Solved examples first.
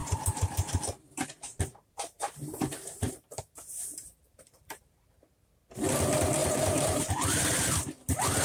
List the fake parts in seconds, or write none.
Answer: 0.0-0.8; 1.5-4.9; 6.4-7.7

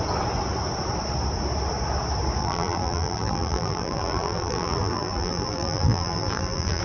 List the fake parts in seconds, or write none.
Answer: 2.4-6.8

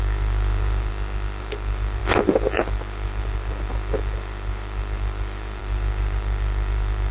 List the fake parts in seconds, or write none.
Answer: 0.0-0.9; 1.4-7.1

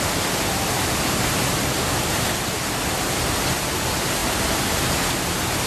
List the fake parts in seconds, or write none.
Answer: none

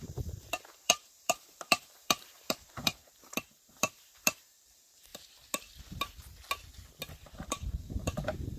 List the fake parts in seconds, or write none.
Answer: 0.0-5.1; 7.2-8.6

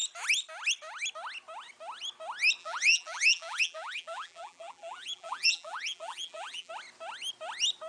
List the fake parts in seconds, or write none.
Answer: 2.6-6.7